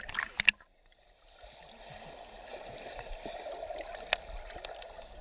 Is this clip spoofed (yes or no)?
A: no